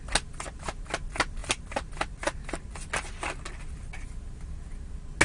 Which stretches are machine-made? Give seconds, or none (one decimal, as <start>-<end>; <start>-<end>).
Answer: none